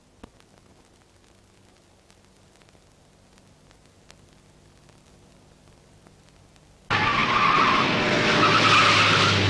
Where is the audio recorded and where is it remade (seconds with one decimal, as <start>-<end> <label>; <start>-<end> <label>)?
0.0-7.2 recorded; 7.2-8.0 remade; 8.0-9.5 recorded